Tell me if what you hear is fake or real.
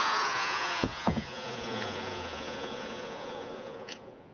fake